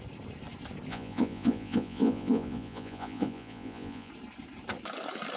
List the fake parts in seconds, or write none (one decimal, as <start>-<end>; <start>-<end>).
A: 0.9-4.1